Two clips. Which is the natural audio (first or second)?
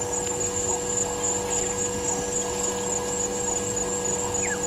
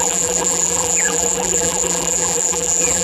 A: first